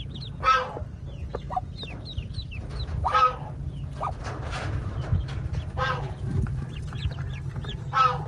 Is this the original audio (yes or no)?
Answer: yes